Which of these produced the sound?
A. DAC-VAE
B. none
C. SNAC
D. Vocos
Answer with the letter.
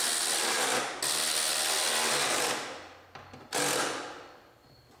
B